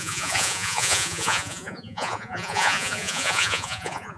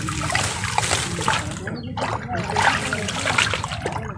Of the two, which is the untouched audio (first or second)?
second